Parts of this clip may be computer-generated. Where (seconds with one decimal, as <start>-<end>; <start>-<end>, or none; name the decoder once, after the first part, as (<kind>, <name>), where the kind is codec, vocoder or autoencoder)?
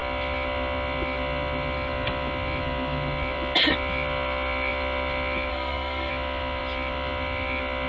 5.5-6.1 (codec, SNAC)